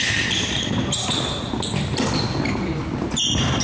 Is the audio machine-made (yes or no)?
no